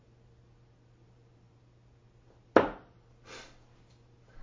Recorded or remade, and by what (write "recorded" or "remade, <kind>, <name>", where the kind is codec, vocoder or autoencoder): recorded